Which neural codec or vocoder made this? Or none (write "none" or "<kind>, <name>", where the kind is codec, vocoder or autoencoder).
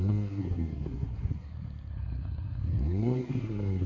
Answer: codec, SNAC